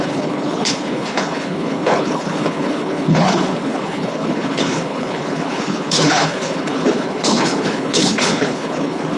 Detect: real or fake fake